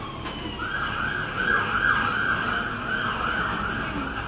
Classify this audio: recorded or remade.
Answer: recorded